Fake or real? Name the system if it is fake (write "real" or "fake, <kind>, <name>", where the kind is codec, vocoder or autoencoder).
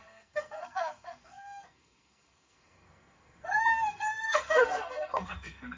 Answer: fake, codec, SNAC